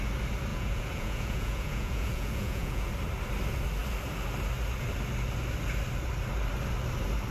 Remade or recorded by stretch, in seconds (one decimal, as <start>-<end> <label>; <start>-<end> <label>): 0.0-0.5 recorded; 0.5-2.9 remade; 2.9-7.3 recorded